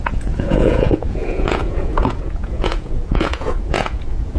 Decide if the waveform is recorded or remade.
remade